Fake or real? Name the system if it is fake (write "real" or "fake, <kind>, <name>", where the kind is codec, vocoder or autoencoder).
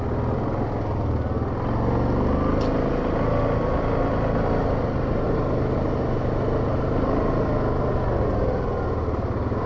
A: real